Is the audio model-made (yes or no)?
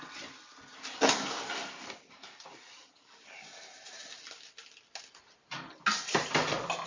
no